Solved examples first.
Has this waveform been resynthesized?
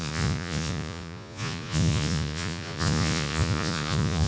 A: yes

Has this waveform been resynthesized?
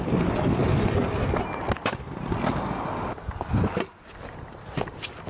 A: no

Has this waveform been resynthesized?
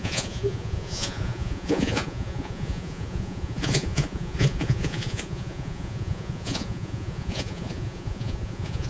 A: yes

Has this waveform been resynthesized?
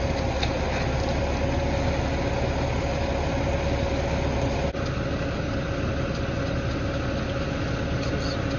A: no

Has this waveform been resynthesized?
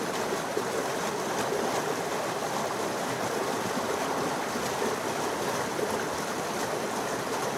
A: no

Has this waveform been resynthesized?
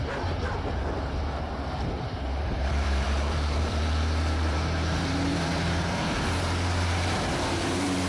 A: yes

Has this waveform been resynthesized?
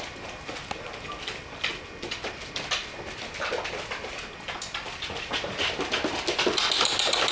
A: no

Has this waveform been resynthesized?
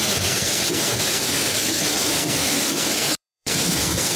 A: yes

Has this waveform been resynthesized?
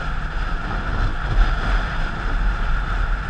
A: no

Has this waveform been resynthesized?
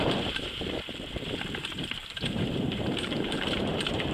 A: yes